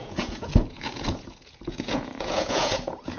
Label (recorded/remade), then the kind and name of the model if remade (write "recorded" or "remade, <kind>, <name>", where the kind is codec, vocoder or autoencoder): remade, vocoder, Vocos